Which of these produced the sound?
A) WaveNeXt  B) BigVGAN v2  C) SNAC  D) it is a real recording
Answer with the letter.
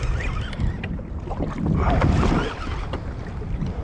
D